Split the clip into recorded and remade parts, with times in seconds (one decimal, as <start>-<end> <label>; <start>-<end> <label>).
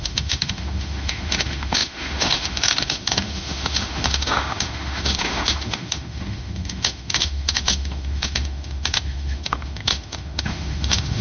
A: 0.0-11.2 remade